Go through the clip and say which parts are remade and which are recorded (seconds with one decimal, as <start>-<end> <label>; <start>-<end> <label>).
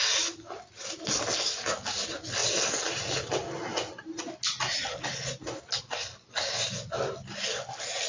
0.0-8.1 recorded